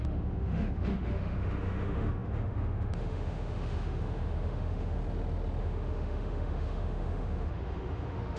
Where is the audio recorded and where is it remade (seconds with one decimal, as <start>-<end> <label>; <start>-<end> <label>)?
0.0-5.0 remade; 5.0-5.6 recorded; 5.6-8.4 remade